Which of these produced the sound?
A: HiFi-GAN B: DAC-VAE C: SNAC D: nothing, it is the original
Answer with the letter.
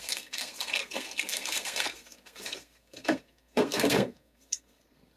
C